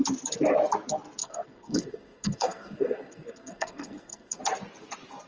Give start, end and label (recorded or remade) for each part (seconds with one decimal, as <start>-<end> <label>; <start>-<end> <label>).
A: 0.0-1.2 recorded; 1.2-4.4 remade; 4.4-5.3 recorded